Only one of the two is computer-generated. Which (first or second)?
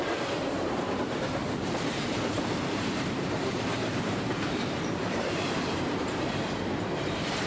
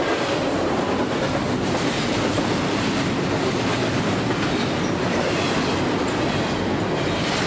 first